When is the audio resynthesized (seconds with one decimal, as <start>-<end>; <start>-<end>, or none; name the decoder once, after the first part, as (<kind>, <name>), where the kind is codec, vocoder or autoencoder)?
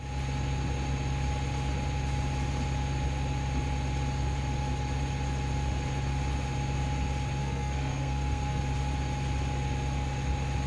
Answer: 7.4-8.6 (codec, SNAC)